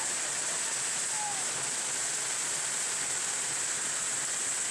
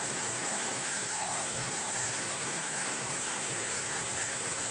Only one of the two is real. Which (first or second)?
first